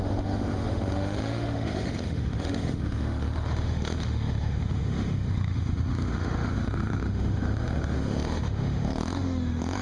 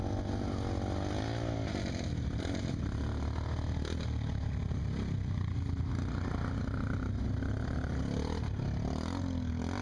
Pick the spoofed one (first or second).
first